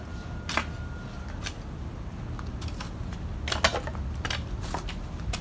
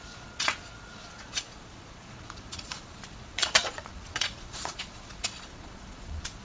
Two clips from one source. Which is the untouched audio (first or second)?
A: first